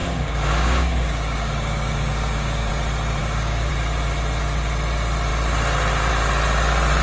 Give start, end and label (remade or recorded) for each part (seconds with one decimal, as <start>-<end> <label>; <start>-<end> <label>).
0.0-2.7 remade; 2.7-3.2 recorded; 3.2-3.7 remade; 3.7-7.0 recorded